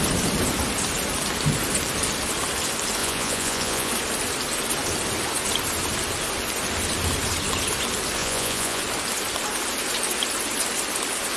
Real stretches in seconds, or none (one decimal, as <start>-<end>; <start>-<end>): 0.0-3.0; 3.9-8.2; 8.8-11.4